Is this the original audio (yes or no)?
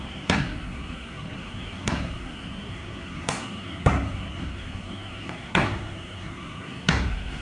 no